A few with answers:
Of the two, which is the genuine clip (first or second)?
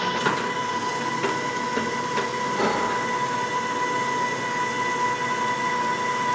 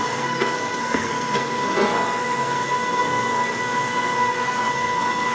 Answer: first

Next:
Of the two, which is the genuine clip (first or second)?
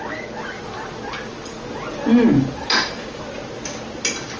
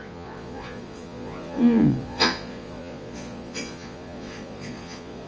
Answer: first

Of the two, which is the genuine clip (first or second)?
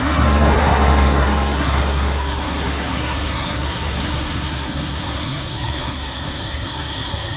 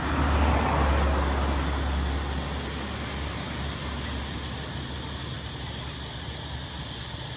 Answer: second